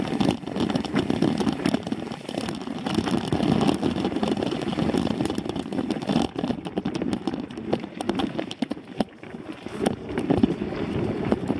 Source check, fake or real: real